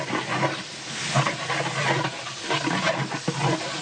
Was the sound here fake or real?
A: real